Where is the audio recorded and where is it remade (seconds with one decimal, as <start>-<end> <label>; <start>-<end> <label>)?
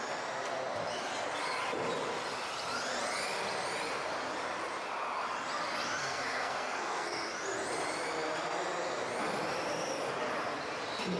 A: 0.0-6.0 recorded; 6.0-7.3 remade; 7.3-11.2 recorded